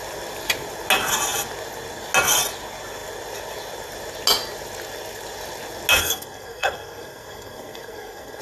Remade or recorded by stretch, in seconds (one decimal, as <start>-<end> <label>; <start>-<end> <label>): 0.0-6.0 recorded; 6.0-8.4 remade